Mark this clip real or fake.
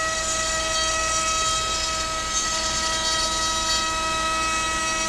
real